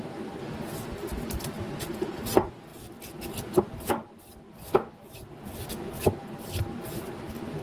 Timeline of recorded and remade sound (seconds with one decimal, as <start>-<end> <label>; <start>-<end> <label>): 0.0-1.1 recorded; 1.1-2.0 remade; 2.0-7.6 recorded